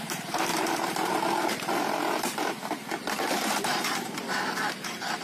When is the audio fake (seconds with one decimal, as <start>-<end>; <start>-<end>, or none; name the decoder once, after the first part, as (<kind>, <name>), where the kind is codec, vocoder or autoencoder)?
0.0-0.5 (vocoder, BigVGAN v2); 3.6-5.2